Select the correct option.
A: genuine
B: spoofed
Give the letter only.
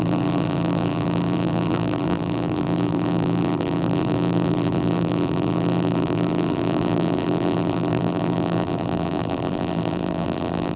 B